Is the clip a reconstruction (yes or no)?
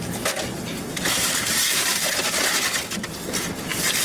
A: no